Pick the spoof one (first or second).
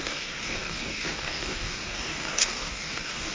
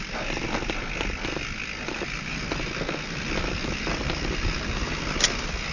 first